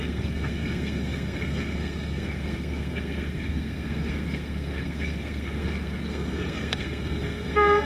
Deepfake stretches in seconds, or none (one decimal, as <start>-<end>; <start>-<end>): 0.0-7.8